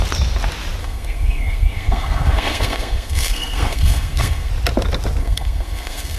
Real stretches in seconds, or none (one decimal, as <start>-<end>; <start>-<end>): 0.0-0.8; 4.5-5.2